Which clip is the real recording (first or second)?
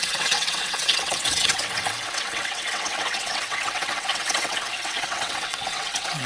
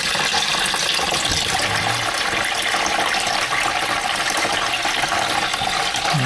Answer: second